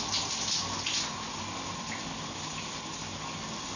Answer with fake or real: real